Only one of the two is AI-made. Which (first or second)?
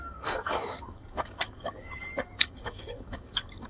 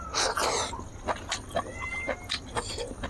first